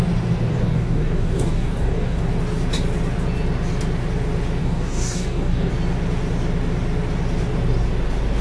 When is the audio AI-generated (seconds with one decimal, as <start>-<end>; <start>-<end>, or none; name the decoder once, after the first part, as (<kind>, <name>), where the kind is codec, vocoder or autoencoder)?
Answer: 0.5-2.3 (codec, DAC); 4.6-5.7